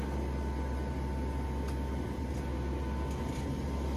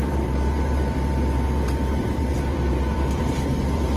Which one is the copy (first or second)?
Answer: second